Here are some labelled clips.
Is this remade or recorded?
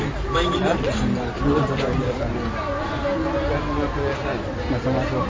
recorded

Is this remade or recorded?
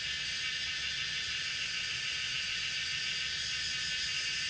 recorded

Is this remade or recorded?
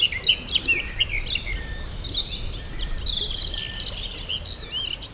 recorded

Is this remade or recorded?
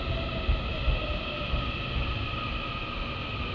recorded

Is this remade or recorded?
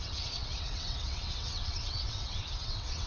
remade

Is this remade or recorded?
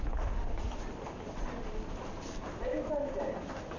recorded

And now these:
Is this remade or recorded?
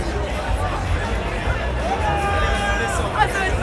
recorded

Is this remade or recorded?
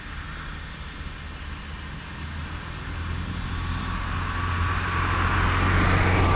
recorded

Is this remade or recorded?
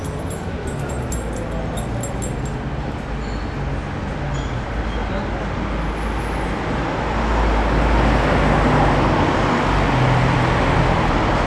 recorded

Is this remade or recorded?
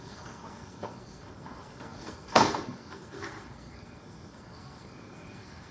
remade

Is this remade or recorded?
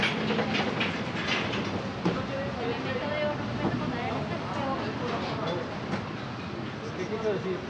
recorded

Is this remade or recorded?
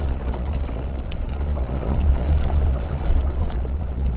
remade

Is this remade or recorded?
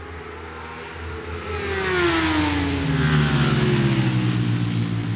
recorded